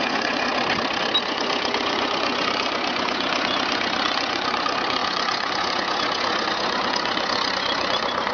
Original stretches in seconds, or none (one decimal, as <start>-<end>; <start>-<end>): 0.5-1.2